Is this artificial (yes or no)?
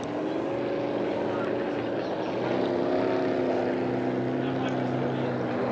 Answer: no